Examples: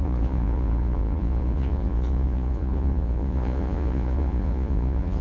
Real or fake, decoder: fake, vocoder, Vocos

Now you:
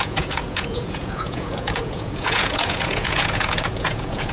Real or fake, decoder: fake, vocoder, Vocos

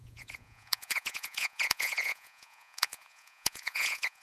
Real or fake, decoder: fake, vocoder, Vocos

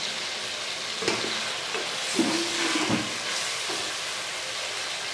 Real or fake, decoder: real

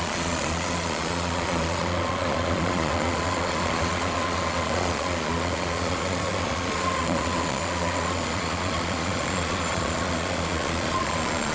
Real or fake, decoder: fake, vocoder, Vocos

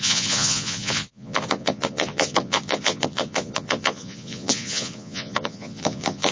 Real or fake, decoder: fake, vocoder, Vocos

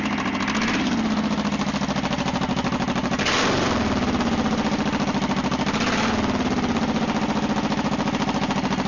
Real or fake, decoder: real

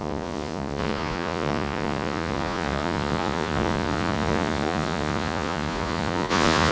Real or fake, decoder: fake, vocoder, Vocos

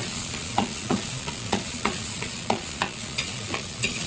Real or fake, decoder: fake, vocoder, Vocos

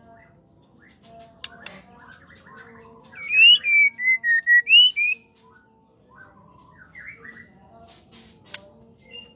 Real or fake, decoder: real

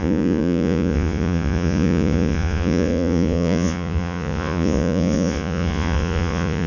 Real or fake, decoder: fake, vocoder, Vocos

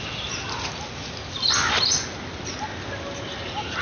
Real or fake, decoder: real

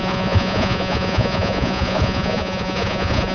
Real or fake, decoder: fake, vocoder, Vocos